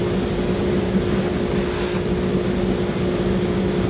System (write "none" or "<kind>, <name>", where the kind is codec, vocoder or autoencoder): none